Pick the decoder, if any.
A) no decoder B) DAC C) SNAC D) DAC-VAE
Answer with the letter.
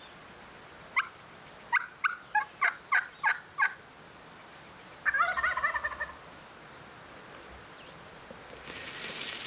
A